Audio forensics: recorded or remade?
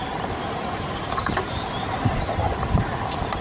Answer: recorded